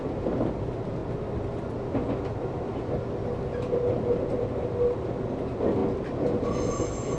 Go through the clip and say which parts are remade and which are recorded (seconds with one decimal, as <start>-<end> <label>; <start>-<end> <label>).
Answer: 0.0-7.2 recorded